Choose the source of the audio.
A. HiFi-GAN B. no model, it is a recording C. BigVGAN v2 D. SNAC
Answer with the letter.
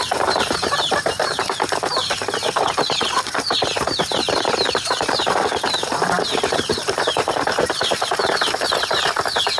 C